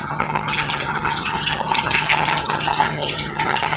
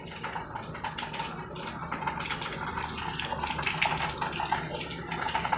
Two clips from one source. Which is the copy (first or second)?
first